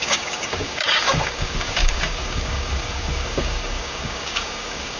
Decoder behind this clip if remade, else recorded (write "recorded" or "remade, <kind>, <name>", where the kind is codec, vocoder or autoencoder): remade, codec, DAC